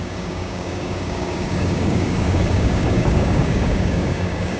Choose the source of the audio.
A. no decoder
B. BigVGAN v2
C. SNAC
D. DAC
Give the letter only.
D